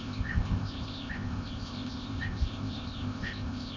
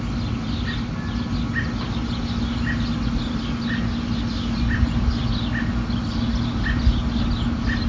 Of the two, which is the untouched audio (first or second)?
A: second